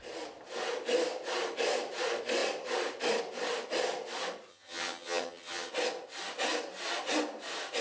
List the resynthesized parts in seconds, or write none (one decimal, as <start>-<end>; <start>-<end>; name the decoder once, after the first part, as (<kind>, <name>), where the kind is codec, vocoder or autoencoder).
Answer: 4.5-5.7 (vocoder, HiFi-GAN)